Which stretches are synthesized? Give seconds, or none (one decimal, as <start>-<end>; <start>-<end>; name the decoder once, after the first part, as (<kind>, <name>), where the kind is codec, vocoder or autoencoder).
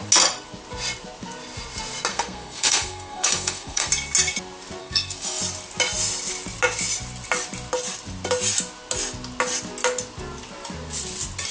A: 2.1-3.9 (codec, SNAC); 4.8-5.4